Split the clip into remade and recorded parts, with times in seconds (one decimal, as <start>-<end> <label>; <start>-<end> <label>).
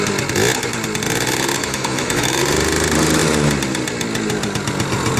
0.0-1.6 recorded; 1.6-2.4 remade; 2.4-5.2 recorded